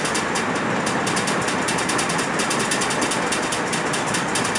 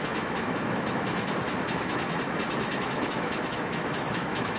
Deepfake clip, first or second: second